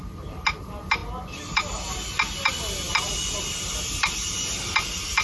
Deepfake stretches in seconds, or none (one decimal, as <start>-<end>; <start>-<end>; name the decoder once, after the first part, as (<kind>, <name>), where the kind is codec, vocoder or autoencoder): none